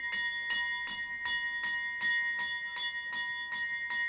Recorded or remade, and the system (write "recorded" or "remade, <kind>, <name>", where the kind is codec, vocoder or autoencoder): recorded